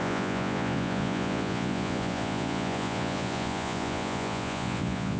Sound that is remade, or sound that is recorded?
remade